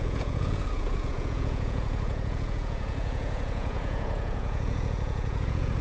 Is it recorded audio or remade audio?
remade